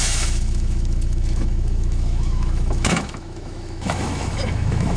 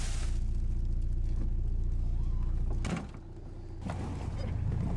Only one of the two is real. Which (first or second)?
second